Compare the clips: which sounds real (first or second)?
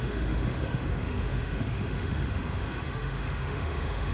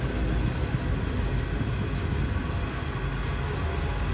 second